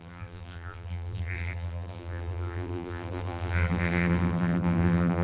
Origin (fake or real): fake